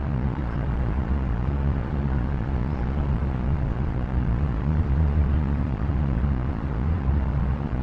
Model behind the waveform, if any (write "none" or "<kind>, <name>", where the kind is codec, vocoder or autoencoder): vocoder, Vocos